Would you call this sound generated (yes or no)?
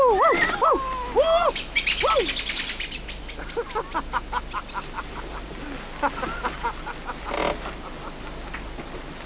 no